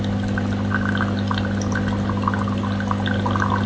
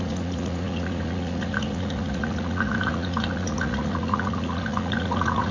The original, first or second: first